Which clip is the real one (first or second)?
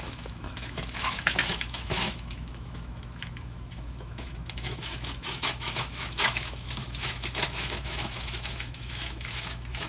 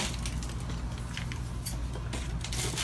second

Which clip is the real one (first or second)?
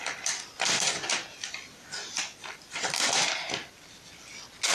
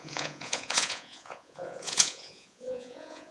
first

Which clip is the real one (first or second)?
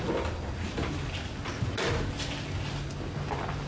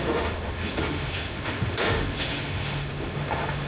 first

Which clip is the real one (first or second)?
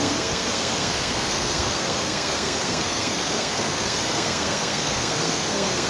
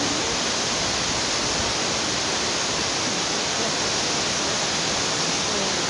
second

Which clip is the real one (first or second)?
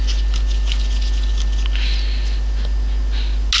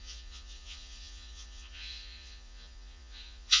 first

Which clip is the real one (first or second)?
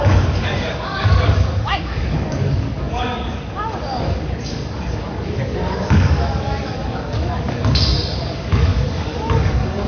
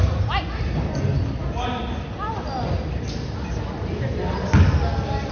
second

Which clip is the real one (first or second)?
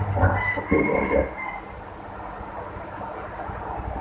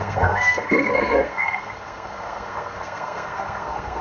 first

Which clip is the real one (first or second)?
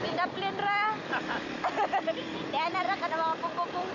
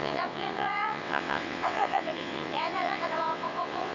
first